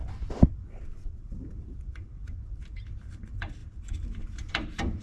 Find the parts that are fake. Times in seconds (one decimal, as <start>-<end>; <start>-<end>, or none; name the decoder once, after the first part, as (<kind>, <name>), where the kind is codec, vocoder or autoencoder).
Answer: 0.5-5.0 (vocoder, BigVGAN v2)